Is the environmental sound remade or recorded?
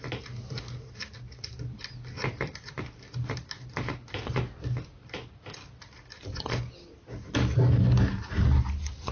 recorded